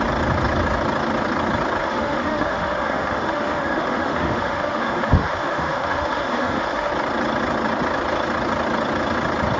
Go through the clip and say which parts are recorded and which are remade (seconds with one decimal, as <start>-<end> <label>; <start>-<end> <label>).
0.0-1.8 recorded; 1.8-6.9 remade; 6.9-9.6 recorded

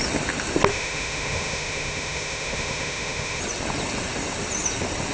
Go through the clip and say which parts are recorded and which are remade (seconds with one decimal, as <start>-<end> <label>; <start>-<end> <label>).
0.0-0.7 recorded; 0.7-3.4 remade; 3.4-5.1 recorded

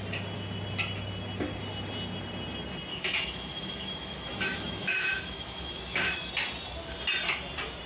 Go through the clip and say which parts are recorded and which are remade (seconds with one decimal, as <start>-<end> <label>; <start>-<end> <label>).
0.0-2.9 recorded; 2.9-6.3 remade; 6.3-7.9 recorded

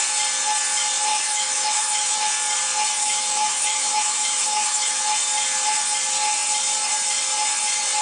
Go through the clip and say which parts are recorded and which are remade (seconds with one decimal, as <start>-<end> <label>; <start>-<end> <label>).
0.0-1.1 recorded; 1.1-2.1 remade; 2.1-3.0 recorded; 3.0-5.0 remade; 5.0-8.0 recorded

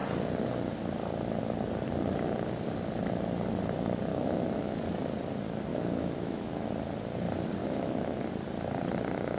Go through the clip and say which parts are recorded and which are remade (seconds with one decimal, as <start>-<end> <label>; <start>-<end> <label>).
0.0-4.1 recorded; 4.1-4.8 remade; 4.8-5.7 recorded; 5.7-6.7 remade; 6.7-7.6 recorded; 7.6-8.2 remade; 8.2-9.4 recorded

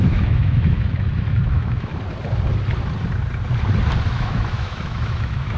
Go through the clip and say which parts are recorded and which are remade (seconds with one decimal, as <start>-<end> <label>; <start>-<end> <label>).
0.0-1.9 remade; 1.9-4.1 recorded; 4.1-5.6 remade

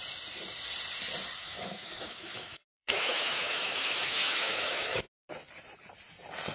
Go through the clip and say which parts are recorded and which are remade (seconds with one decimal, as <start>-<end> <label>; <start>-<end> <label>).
0.0-1.4 recorded; 1.4-5.3 remade; 5.3-6.5 recorded

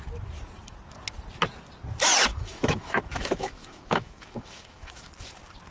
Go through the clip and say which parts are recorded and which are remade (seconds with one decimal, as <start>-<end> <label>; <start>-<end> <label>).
0.0-2.3 recorded; 2.3-5.1 remade; 5.1-5.7 recorded